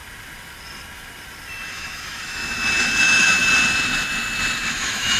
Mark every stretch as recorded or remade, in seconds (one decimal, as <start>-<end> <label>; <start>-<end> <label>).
0.0-1.7 recorded; 1.7-2.4 remade; 2.4-3.0 recorded; 3.0-3.4 remade; 3.4-4.7 recorded; 4.7-5.2 remade